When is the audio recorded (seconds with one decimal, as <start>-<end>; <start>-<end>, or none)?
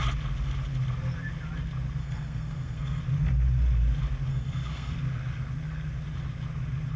0.0-2.0; 3.0-4.3; 4.9-7.0